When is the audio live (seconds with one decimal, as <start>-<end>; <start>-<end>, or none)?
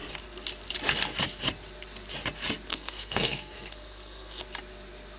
0.0-2.7; 4.4-5.2